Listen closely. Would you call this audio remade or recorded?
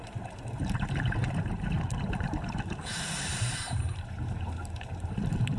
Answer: remade